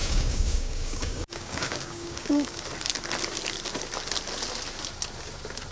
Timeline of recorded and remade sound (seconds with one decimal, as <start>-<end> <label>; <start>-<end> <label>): 0.0-2.6 remade; 2.6-5.7 recorded